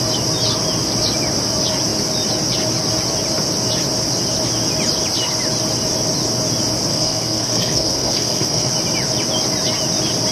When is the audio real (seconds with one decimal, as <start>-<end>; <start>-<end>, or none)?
0.0-6.9; 8.7-10.3